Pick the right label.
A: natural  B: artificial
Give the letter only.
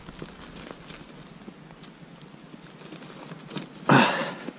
A